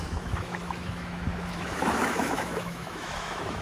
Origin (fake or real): fake